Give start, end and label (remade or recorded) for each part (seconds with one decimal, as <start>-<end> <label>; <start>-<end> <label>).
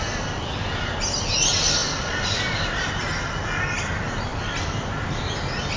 0.0-1.8 recorded; 1.8-3.0 remade; 3.0-5.8 recorded